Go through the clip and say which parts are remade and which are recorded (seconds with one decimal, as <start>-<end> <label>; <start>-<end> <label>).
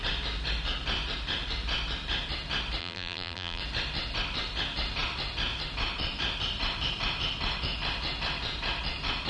0.0-2.8 recorded; 2.8-3.6 remade; 3.6-9.3 recorded